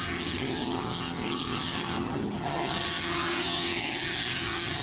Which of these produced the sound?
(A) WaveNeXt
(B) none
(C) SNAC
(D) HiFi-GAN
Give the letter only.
D